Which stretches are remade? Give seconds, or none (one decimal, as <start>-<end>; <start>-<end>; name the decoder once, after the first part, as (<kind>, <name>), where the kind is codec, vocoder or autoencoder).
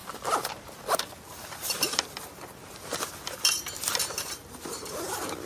1.3-5.5 (vocoder, BigVGAN v2)